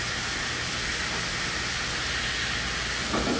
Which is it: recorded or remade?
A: recorded